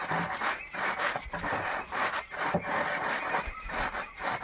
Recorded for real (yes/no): yes